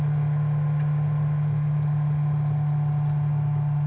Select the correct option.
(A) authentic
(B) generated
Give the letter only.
A